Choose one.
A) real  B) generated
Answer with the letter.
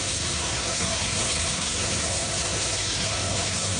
B